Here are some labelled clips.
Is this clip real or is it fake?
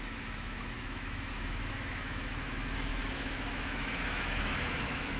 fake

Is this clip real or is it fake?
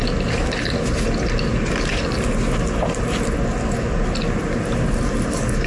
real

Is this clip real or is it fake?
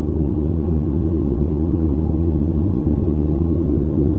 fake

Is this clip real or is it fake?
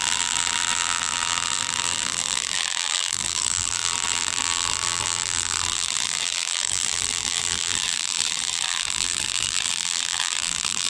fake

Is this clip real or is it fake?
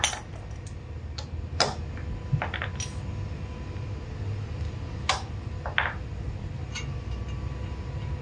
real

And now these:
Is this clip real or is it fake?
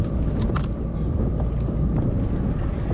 real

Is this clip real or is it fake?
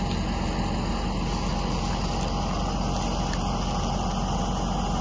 real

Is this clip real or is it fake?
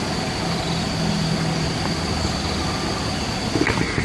real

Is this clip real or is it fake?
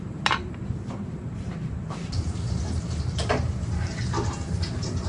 fake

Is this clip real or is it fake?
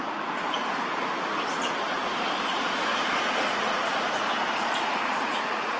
fake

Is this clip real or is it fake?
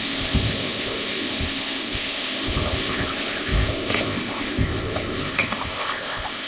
fake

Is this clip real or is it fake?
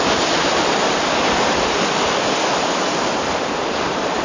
real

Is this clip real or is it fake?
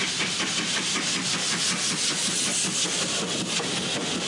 real